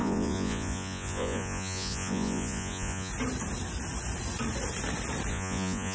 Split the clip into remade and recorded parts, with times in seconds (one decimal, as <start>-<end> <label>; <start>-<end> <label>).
0.0-3.1 remade; 3.1-5.3 recorded; 5.3-5.9 remade